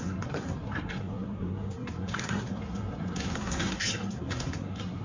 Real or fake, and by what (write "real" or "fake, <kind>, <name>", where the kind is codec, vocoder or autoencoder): fake, codec, SNAC